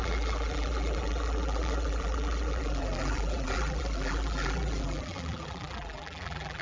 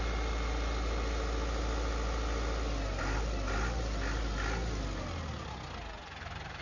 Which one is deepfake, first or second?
first